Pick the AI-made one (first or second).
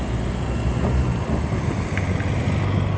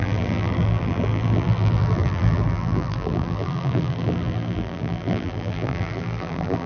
second